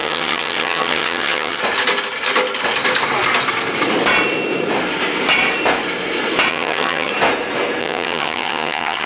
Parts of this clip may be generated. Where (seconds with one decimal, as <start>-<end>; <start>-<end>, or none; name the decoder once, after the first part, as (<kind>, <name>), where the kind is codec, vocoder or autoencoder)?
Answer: 0.0-1.6 (vocoder, HiFi-GAN); 6.5-7.1; 7.8-9.1